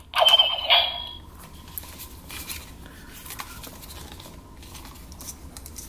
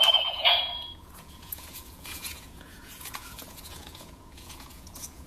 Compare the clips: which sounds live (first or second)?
first